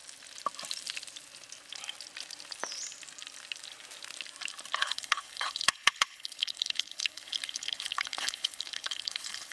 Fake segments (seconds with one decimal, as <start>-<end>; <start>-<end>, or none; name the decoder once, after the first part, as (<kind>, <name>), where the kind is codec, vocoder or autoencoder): 4.8-9.5 (codec, HILCodec)